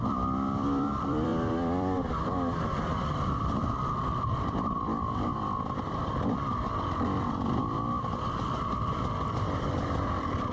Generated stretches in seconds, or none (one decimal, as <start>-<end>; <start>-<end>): 0.0-7.6; 8.6-10.5